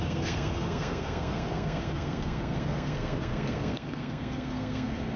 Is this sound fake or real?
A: fake